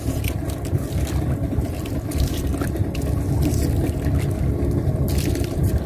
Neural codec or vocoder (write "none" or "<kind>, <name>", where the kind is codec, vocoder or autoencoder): none